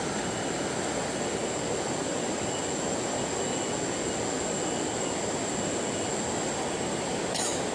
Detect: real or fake real